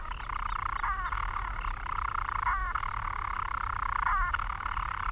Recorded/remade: recorded